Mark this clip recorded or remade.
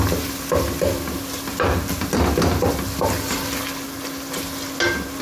recorded